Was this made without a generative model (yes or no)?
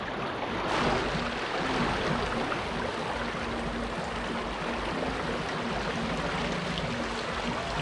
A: yes